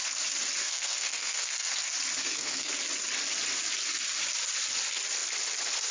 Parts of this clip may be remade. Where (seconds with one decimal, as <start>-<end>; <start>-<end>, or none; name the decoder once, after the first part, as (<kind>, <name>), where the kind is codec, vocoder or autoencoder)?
0.6-1.7 (codec, SNAC); 2.2-2.7